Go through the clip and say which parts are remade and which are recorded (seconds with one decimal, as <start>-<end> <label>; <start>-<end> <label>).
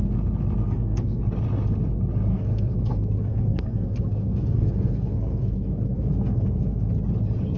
0.0-0.6 recorded; 0.6-1.2 remade; 1.2-2.3 recorded; 2.3-6.9 remade; 6.9-7.6 recorded